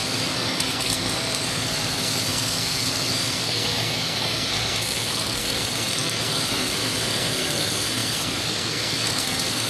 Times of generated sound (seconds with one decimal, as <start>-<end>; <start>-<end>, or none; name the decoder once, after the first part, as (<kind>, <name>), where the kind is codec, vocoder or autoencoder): 0.0-9.7 (codec, SNAC)